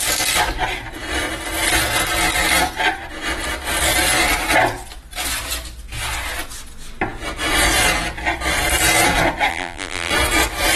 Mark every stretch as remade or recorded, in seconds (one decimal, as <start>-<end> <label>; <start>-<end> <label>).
0.0-9.5 recorded; 9.5-10.1 remade; 10.1-10.8 recorded